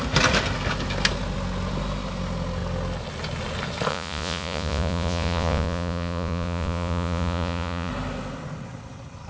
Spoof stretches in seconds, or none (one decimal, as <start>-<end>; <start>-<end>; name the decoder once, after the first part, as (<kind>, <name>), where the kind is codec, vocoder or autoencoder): 3.9-7.9 (vocoder, Vocos)